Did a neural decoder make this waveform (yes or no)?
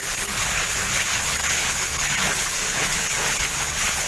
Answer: yes